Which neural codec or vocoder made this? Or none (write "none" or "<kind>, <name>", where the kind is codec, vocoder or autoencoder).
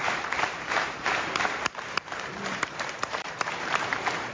vocoder, BigVGAN v2